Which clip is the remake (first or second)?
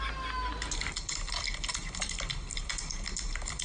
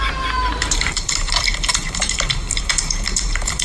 second